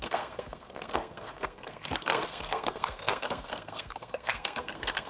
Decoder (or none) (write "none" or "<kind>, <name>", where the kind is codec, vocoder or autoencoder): codec, SNAC